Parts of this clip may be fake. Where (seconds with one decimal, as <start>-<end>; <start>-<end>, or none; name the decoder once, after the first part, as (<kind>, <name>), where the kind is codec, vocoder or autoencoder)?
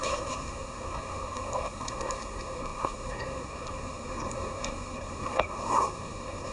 0.0-6.5 (codec, SNAC)